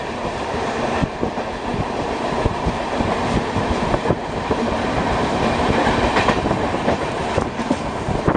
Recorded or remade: remade